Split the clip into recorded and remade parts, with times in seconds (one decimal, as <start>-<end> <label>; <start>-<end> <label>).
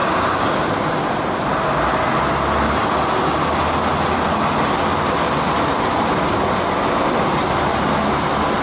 0.0-8.6 recorded